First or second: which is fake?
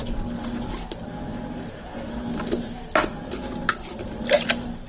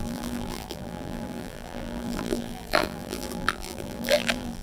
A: second